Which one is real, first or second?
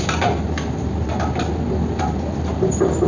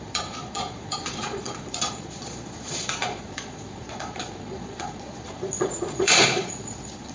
first